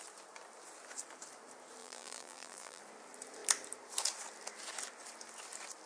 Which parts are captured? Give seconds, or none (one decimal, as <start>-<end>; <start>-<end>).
0.0-1.8; 2.8-5.9